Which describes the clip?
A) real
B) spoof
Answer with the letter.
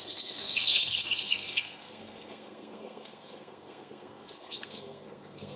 B